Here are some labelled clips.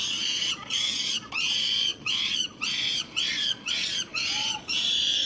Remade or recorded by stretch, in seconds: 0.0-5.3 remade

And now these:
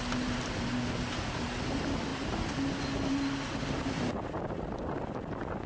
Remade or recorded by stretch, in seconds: 0.0-5.7 recorded

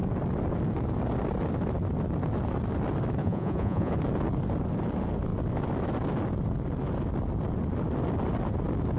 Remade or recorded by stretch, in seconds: 0.0-3.2 recorded; 3.2-3.9 remade; 3.9-9.0 recorded